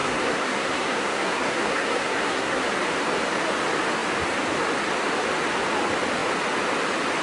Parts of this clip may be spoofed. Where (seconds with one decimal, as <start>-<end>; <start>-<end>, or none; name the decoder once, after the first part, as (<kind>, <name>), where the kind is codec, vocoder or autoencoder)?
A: 0.0-2.6 (codec, SNAC)